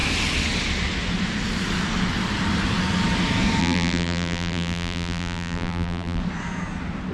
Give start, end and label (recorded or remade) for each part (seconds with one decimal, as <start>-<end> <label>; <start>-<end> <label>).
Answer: 0.0-3.6 recorded; 3.6-6.2 remade; 6.2-7.1 recorded